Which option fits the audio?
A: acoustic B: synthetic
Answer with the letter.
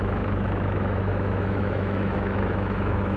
B